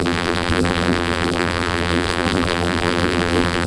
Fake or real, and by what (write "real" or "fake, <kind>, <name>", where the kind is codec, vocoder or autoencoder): fake, vocoder, BigVGAN v2